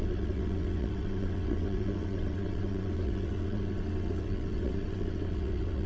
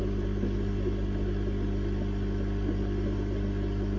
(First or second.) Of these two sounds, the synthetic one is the first